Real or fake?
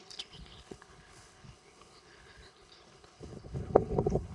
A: fake